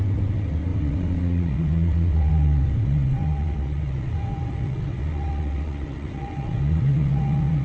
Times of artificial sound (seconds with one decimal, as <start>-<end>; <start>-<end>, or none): 0.0-7.6

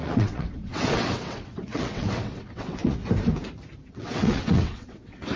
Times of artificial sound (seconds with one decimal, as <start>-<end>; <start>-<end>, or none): 0.0-3.0; 3.9-5.4

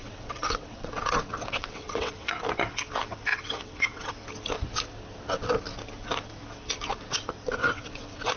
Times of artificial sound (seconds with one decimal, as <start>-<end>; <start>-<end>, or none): 0.0-2.4; 3.3-4.1; 7.6-8.4

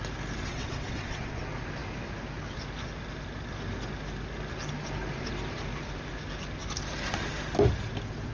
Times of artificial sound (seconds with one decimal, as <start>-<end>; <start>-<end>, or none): 0.5-1.4